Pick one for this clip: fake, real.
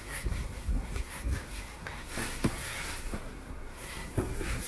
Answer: fake